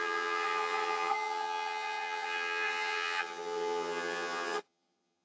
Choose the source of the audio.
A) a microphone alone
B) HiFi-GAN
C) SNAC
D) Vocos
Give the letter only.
B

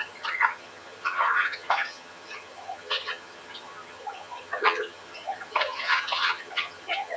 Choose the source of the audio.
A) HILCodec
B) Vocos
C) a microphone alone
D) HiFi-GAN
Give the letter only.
D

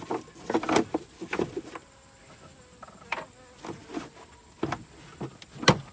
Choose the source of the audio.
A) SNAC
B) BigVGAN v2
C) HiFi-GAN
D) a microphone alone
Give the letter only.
D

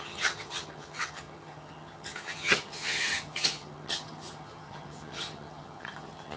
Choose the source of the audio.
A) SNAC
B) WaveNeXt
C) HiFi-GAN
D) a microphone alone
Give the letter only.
C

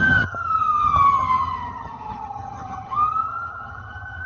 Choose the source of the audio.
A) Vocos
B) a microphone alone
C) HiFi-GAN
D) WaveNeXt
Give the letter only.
C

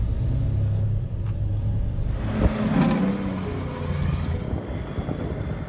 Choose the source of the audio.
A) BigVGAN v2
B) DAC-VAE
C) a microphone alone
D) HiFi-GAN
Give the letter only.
C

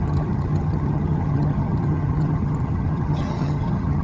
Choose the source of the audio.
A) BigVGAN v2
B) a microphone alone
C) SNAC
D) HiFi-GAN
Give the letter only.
D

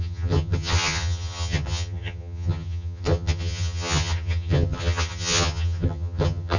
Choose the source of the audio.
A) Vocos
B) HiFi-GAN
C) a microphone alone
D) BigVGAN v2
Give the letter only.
B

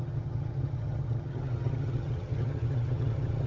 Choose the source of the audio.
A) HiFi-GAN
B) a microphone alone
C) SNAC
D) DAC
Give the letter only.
A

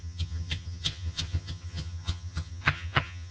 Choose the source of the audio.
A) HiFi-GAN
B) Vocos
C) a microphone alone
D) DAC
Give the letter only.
A